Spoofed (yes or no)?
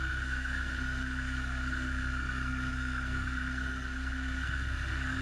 yes